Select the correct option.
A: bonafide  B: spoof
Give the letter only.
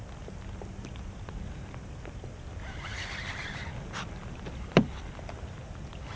A